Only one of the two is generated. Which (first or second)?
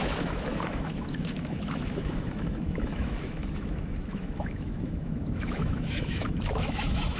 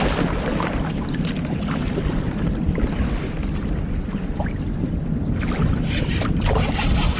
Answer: first